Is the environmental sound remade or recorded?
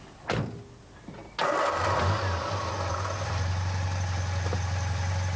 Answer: recorded